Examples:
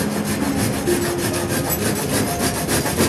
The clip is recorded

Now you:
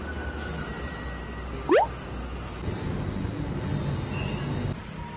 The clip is recorded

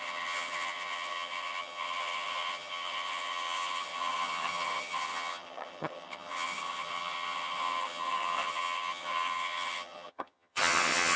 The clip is remade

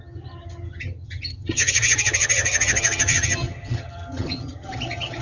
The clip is remade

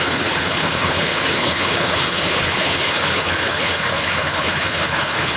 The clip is remade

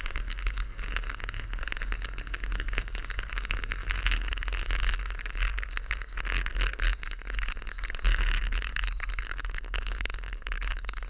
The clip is remade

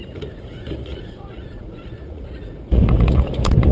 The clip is remade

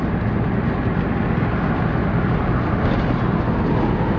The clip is recorded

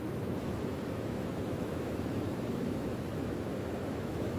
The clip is remade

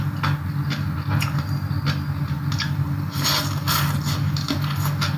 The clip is recorded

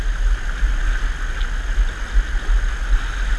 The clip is recorded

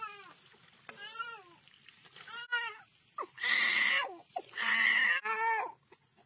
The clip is recorded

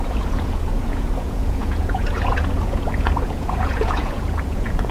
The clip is remade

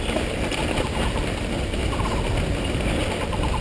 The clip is recorded